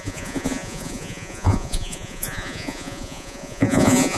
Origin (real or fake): fake